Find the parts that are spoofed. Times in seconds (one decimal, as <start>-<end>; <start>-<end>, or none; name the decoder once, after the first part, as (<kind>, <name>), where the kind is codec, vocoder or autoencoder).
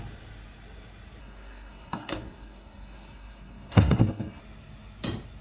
1.2-4.4 (codec, SNAC)